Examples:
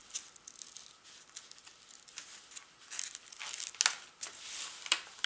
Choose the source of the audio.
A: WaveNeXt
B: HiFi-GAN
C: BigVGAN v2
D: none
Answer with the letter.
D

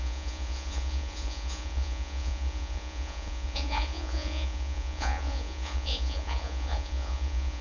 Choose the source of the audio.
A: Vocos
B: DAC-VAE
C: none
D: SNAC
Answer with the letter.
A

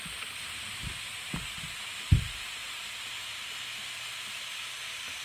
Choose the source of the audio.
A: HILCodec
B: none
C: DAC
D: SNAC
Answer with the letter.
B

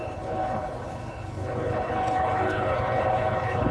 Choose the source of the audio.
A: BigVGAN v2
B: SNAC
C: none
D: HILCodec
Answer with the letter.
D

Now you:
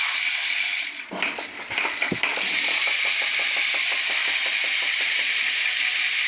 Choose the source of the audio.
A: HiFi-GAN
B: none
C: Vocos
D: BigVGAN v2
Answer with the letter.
D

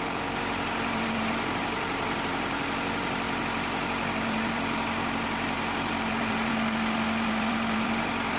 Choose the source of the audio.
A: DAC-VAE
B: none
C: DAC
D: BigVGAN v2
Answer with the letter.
D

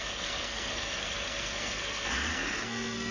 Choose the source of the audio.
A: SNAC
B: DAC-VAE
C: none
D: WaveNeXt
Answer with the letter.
A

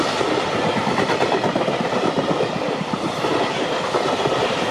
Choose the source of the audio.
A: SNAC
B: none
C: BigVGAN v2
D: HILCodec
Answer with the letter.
B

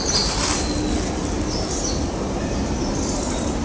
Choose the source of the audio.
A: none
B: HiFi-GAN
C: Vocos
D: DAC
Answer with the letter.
A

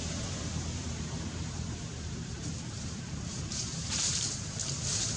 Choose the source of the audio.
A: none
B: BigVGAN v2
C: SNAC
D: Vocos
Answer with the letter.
B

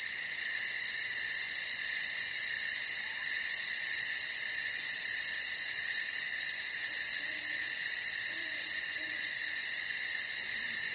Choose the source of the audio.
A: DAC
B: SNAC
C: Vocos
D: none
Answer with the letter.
C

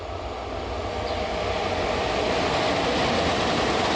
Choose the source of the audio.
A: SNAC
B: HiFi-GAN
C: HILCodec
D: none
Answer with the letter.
D